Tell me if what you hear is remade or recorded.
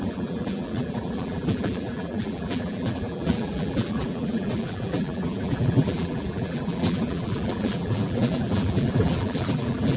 remade